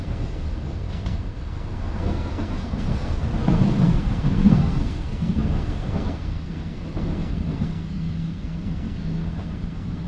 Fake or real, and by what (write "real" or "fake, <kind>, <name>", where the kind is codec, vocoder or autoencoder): fake, codec, SNAC